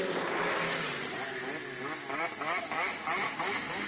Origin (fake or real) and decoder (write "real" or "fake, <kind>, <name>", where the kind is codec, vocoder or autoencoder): real